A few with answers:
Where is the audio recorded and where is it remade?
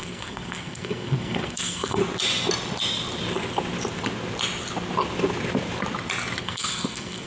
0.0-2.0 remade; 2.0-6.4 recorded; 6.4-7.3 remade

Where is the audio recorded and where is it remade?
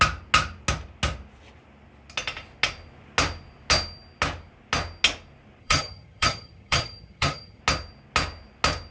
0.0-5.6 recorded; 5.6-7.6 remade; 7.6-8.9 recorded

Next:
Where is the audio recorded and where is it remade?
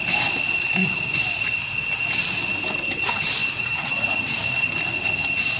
0.0-3.4 recorded; 3.4-4.2 remade; 4.2-5.6 recorded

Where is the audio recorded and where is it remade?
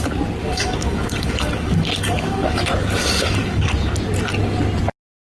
0.0-0.4 recorded; 0.4-2.6 remade; 2.6-3.0 recorded; 3.0-3.7 remade; 3.7-5.2 recorded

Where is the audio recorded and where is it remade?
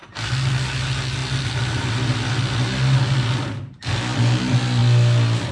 0.0-5.5 recorded